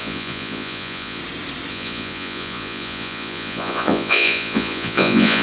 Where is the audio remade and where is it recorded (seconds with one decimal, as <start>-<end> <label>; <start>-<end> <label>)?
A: 0.0-1.2 remade; 1.2-1.7 recorded; 1.7-5.4 remade